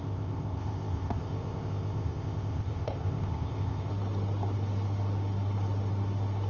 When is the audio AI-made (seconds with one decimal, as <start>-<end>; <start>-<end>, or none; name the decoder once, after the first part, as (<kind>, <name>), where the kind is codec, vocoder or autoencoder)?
0.0-3.9 (codec, ZipCodec)